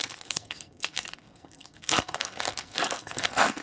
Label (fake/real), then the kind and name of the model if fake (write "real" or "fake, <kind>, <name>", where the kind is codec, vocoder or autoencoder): fake, codec, SNAC